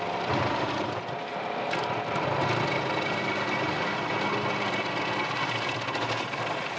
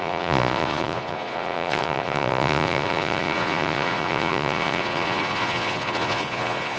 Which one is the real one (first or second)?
first